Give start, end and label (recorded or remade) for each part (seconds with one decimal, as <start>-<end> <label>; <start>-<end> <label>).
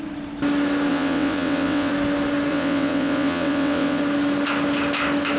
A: 0.0-0.9 recorded; 0.9-1.9 remade; 1.9-2.5 recorded; 2.5-4.0 remade; 4.0-5.4 recorded